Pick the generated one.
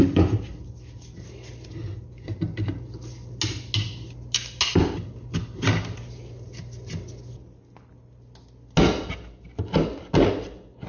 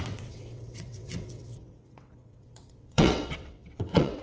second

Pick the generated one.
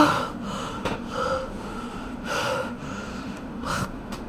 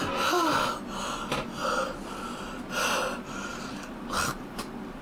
first